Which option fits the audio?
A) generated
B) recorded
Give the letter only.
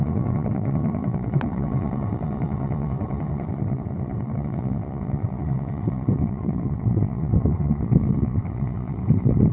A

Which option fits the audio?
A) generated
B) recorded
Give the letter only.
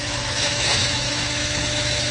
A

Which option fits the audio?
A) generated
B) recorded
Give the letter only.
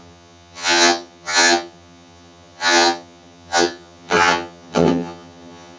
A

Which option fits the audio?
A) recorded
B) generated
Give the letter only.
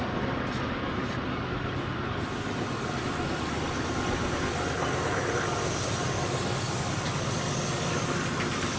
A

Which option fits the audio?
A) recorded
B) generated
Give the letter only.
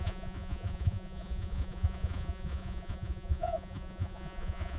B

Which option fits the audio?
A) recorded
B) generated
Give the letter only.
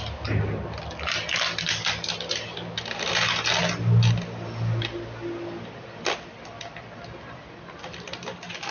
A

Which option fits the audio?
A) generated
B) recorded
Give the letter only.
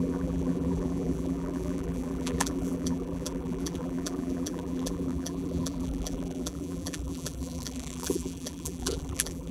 A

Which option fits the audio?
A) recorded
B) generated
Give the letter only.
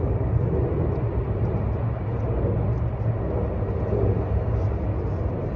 A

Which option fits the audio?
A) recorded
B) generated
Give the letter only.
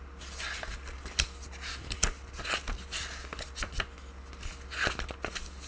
A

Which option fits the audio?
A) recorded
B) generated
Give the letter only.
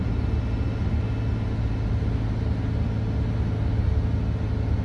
A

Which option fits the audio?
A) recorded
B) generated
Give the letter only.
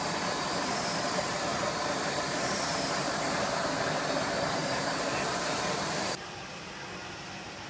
B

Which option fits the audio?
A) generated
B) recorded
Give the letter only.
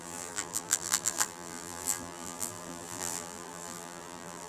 A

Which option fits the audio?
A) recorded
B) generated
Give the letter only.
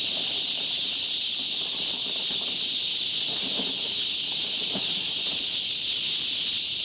A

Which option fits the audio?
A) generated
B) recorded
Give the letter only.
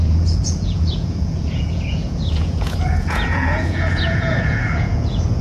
A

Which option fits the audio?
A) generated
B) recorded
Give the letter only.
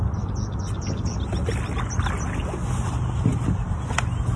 B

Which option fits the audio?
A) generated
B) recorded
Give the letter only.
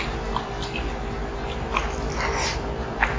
B